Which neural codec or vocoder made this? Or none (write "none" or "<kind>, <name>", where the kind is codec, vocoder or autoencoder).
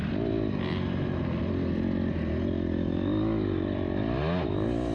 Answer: none